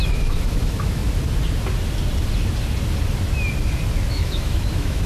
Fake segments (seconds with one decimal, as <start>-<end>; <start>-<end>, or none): 0.0-1.0; 4.1-5.1